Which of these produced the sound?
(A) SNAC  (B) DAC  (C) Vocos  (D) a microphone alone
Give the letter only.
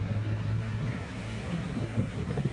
A